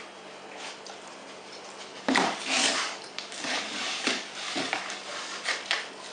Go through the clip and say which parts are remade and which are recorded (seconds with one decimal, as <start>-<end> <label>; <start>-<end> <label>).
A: 0.0-1.9 recorded; 1.9-5.5 remade; 5.5-6.1 recorded